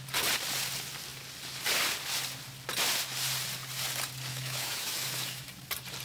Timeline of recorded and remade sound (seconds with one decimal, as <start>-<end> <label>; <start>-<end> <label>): 0.0-4.3 recorded; 4.3-5.5 remade; 5.5-6.0 recorded